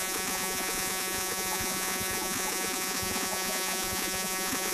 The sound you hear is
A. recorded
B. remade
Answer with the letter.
B